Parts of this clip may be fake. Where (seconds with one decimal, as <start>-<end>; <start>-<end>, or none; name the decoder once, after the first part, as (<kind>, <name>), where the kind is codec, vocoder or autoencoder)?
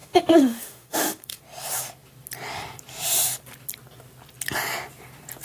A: 0.0-1.4 (autoencoder, DAC-VAE)